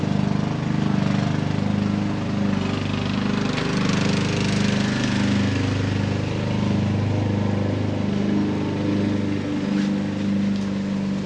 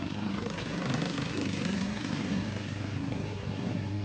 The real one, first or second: first